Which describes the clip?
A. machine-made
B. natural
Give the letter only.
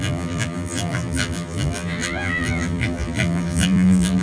A